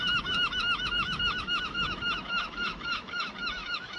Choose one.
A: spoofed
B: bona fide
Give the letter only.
A